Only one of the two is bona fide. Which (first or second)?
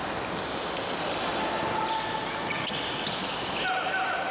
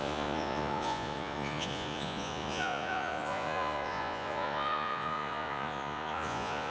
first